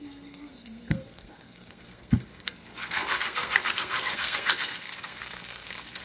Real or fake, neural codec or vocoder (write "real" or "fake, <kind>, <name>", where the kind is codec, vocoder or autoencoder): fake, codec, SNAC